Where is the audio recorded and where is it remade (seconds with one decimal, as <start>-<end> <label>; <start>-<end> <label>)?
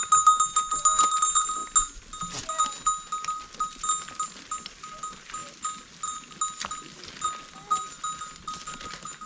0.0-9.3 recorded